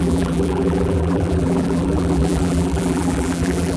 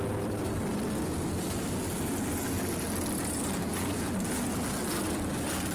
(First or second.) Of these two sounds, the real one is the second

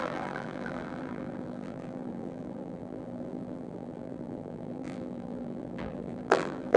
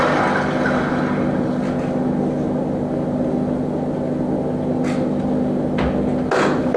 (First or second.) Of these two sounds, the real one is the second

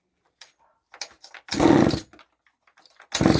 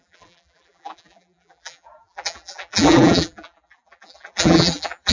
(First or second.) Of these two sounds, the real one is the first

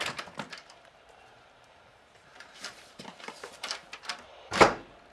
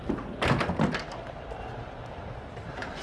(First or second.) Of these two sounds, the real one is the second